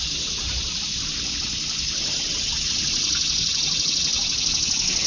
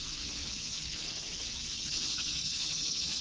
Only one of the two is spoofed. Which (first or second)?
second